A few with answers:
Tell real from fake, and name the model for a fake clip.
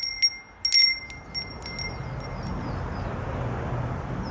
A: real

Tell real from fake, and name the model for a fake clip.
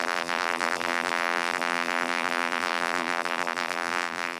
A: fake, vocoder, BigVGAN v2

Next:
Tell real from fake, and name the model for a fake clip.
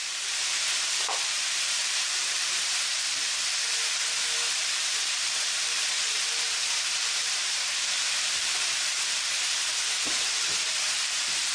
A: fake, vocoder, BigVGAN v2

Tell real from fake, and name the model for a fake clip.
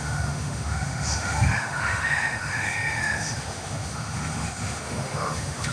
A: fake, autoencoder, DAC-VAE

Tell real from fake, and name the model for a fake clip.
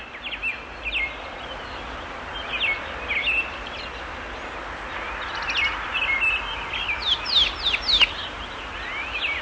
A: real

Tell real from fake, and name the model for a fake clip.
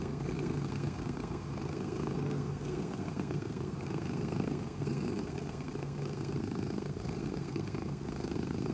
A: fake, codec, SNAC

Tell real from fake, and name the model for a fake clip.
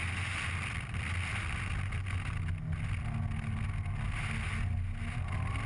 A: real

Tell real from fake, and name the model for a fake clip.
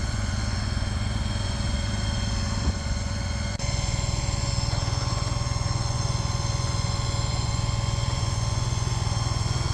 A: fake, vocoder, Vocos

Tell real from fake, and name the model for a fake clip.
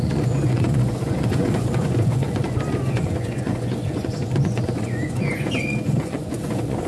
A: fake, vocoder, Vocos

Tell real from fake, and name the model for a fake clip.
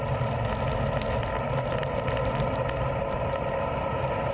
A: real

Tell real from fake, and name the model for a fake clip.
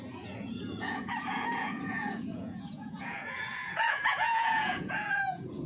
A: fake, vocoder, Vocos